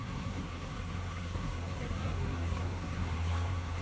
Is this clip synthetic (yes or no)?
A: yes